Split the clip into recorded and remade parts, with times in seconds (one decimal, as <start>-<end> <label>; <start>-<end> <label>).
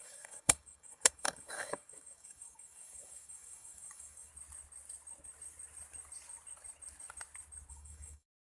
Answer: 0.0-4.3 remade; 4.3-7.7 recorded; 7.7-8.5 remade